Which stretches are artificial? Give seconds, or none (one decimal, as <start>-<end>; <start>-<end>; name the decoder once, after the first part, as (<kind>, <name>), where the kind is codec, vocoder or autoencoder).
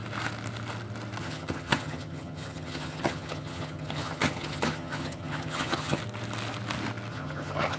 1.2-6.0 (vocoder, HiFi-GAN); 7.1-7.8